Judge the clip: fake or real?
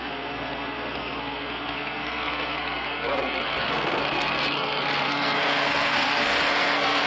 fake